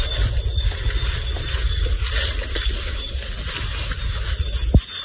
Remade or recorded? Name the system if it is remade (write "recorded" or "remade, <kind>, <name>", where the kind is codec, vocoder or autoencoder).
recorded